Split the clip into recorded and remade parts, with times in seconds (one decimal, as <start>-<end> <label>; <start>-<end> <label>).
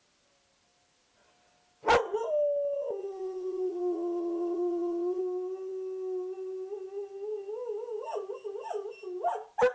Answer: 0.0-3.0 recorded; 3.0-5.2 remade; 5.2-9.7 recorded